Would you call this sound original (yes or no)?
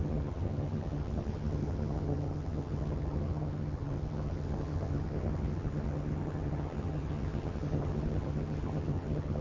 no